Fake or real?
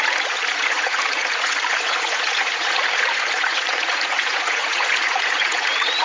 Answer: fake